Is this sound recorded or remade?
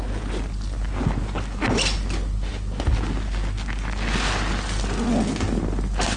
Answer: recorded